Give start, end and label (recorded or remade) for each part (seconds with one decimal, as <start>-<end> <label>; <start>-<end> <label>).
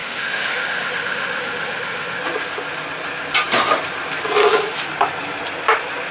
0.0-2.2 remade; 2.2-6.1 recorded